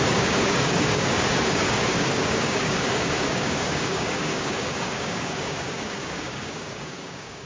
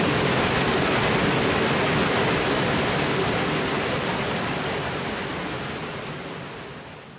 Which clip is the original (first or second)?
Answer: second